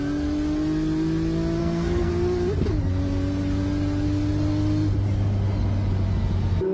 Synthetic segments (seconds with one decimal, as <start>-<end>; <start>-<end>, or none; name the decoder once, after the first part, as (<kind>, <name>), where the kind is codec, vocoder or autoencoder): 1.6-2.1 (codec, SNAC)